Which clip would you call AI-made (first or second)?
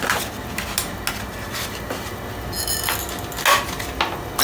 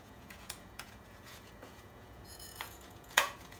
second